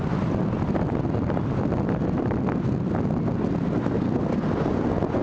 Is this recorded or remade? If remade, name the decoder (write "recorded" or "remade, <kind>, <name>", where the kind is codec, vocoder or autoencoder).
recorded